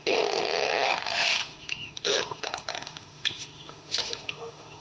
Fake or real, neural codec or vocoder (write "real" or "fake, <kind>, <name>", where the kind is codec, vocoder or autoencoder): fake, autoencoder, DAC-VAE